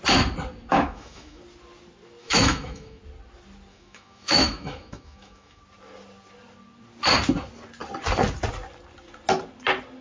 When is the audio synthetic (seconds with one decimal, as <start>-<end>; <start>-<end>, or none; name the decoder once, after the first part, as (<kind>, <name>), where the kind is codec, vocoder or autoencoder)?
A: 0.7-1.4 (autoencoder, DAC-VAE); 2.2-3.0; 3.7-5.6